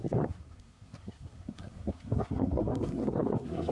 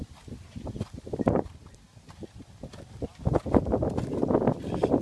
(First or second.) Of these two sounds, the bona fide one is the second